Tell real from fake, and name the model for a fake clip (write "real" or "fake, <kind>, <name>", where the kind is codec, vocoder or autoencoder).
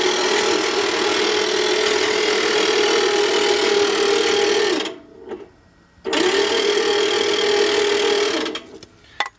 real